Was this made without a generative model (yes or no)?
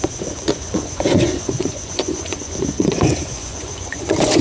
no